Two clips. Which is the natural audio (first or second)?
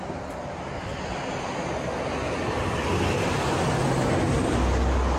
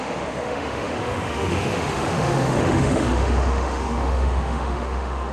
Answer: first